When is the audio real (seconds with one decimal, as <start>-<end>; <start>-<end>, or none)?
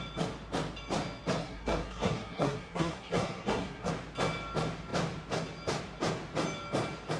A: 0.0-1.4; 3.9-7.2